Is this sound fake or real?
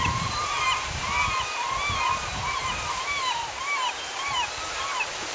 fake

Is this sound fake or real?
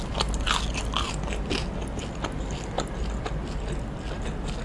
real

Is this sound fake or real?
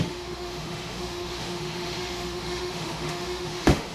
fake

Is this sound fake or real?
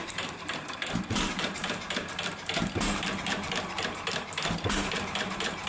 fake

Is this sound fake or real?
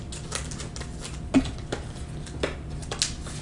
real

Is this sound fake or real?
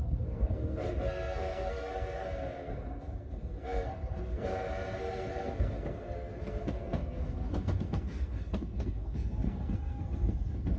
fake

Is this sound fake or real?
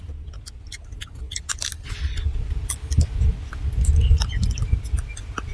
real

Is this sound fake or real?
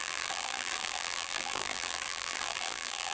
fake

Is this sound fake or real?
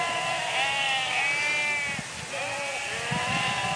real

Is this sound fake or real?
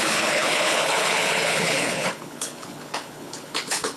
fake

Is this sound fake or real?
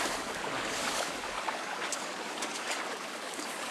fake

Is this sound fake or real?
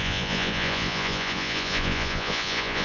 fake